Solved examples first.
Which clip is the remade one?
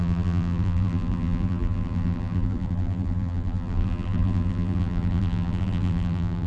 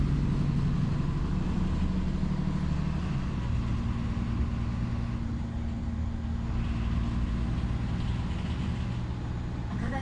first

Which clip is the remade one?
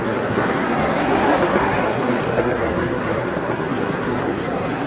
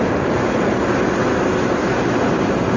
first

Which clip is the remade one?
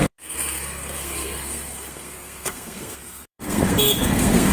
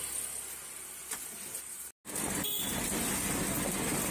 first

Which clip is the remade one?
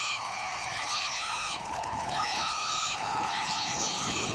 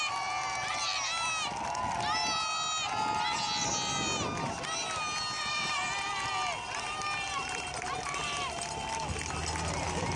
first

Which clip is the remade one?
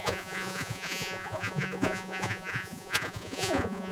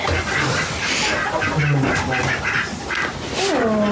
first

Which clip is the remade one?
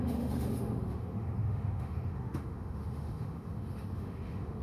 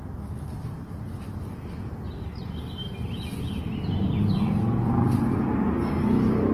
first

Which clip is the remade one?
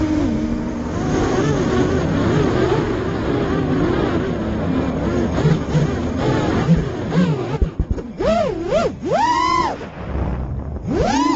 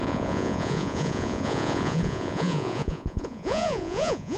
second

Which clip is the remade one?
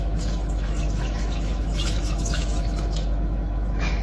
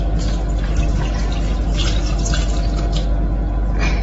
first